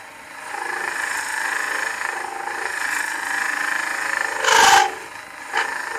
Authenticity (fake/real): real